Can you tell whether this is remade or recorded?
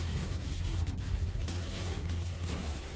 remade